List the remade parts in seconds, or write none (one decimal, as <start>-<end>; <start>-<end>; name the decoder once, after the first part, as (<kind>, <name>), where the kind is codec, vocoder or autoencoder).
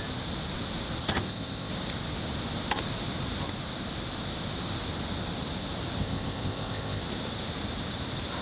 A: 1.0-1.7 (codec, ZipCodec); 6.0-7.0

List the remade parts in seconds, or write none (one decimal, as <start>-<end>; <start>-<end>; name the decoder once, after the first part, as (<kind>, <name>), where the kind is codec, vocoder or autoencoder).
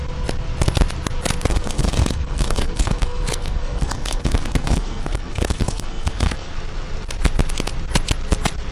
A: 1.5-6.5 (codec, SNAC)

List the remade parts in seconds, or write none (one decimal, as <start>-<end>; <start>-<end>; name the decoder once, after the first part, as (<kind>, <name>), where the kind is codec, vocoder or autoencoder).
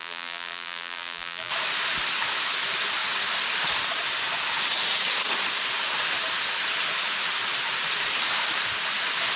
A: 0.0-1.5 (vocoder, BigVGAN v2)